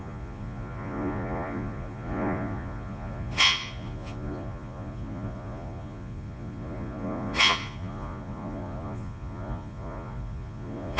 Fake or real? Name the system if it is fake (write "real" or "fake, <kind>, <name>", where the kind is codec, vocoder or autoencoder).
fake, vocoder, Vocos